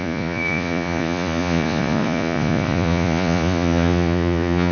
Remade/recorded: remade